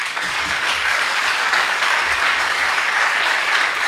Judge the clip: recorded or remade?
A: remade